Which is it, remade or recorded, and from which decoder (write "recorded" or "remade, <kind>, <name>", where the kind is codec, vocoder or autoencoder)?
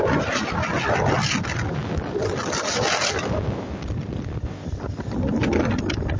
recorded